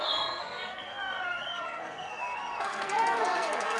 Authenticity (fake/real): fake